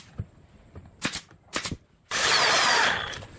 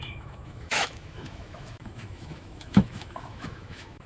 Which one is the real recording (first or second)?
first